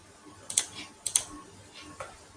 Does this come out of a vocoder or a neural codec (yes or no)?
no